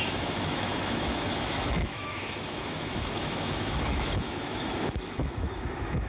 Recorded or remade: remade